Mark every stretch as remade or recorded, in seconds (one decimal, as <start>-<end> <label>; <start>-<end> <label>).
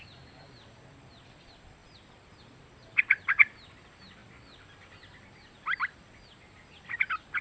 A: 0.0-1.8 recorded; 1.8-3.0 remade; 3.0-4.2 recorded; 4.2-6.1 remade; 6.1-7.4 recorded